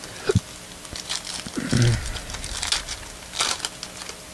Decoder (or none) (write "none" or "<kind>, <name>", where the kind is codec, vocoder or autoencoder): none